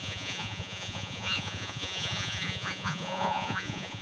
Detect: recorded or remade remade